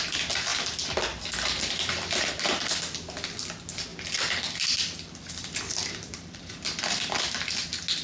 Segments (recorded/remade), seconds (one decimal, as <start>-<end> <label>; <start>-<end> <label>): 0.0-0.5 recorded; 0.5-1.0 remade; 1.0-3.9 recorded; 3.9-6.4 remade; 6.4-8.0 recorded